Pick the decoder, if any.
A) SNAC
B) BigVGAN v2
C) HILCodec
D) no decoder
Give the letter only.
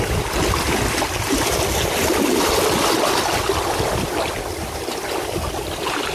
D